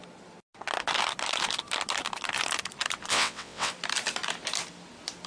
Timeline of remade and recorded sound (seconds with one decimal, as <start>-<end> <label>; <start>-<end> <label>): 0.0-3.1 recorded; 3.1-3.7 remade; 3.7-5.3 recorded